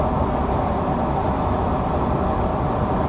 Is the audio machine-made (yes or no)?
no